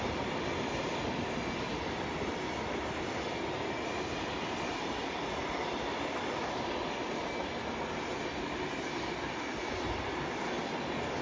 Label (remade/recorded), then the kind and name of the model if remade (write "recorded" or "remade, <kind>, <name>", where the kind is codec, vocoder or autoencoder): recorded